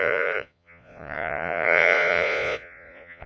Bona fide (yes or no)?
no